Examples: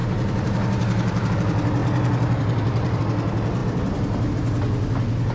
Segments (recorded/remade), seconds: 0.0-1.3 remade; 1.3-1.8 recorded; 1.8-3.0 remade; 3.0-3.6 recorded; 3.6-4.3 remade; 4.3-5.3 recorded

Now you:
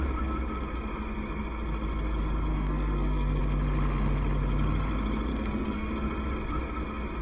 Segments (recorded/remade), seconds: 0.0-2.5 recorded; 2.5-3.4 remade; 3.4-5.3 recorded; 5.3-5.9 remade; 5.9-7.2 recorded

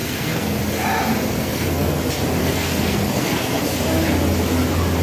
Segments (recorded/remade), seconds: 0.0-0.6 remade; 0.6-1.3 recorded; 1.3-2.0 remade; 2.0-2.4 recorded; 2.4-3.6 remade; 3.6-5.0 recorded

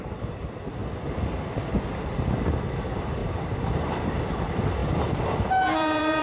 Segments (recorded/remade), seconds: 0.0-3.2 recorded; 3.2-4.0 remade; 4.0-4.8 recorded; 4.8-6.2 remade

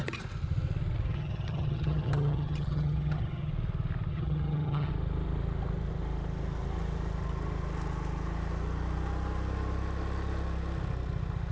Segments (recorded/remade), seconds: 0.0-1.1 recorded; 1.1-3.5 remade; 3.5-4.1 recorded; 4.1-4.9 remade; 4.9-11.5 recorded

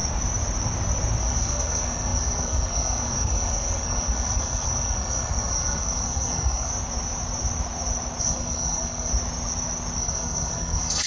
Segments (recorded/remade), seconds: 0.0-1.2 recorded; 1.2-6.7 remade; 6.7-8.2 recorded; 8.2-9.1 remade; 9.1-10.0 recorded; 10.0-11.1 remade

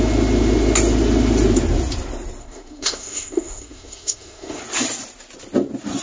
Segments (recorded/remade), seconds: 0.0-2.4 recorded; 2.4-4.6 remade; 4.6-6.0 recorded

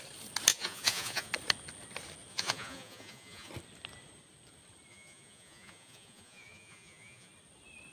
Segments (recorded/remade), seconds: 0.0-0.5 recorded; 0.5-1.3 remade; 1.3-2.3 recorded; 2.3-3.5 remade; 3.5-4.9 recorded; 4.9-7.3 remade; 7.3-7.9 recorded